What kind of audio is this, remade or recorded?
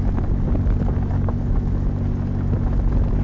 recorded